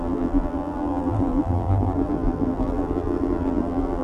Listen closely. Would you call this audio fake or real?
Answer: fake